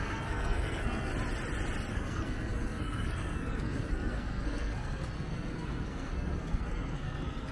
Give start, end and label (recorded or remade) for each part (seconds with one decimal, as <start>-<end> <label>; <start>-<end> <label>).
0.0-1.1 remade; 1.1-1.9 recorded; 1.9-7.5 remade